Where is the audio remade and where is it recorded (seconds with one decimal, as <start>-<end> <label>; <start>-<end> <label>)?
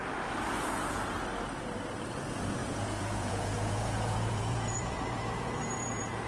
0.0-2.6 recorded; 2.6-6.3 remade